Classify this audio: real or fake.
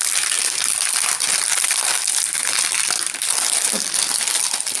real